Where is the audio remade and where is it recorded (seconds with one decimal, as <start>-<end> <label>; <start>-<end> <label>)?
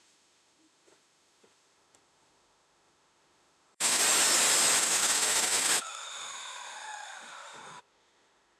0.0-4.0 remade; 4.0-4.8 recorded; 4.8-8.6 remade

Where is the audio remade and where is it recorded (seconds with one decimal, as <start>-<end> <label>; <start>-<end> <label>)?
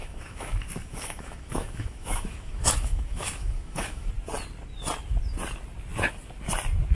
0.0-4.1 remade; 4.1-6.9 recorded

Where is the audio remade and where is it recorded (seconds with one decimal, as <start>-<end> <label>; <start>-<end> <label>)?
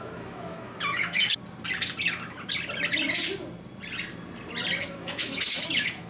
0.0-1.4 remade; 1.4-4.8 recorded; 4.8-6.1 remade